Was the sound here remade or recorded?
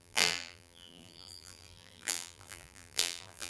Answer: remade